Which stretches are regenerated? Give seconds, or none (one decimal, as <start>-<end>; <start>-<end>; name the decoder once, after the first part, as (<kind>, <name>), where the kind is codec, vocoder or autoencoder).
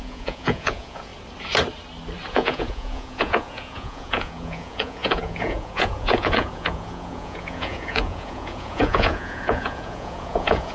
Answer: 0.0-1.1 (vocoder, Vocos); 2.3-10.7